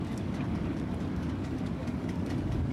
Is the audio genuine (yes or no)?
no